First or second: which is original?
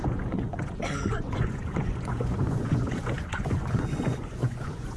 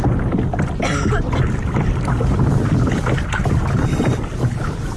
second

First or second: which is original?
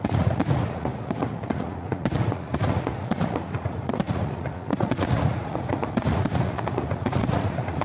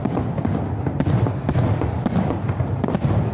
second